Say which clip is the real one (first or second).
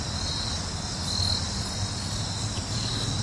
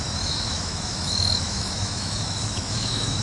first